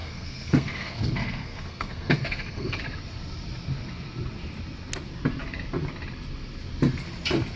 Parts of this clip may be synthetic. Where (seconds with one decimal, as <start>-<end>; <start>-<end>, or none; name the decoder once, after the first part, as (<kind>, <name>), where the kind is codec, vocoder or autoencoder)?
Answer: 0.0-2.8 (codec, SNAC)